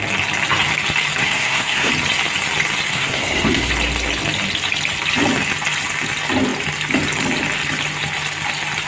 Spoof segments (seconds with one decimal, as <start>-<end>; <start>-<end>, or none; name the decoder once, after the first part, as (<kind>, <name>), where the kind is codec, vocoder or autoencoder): 1.2-1.9 (codec, SNAC); 2.9-3.7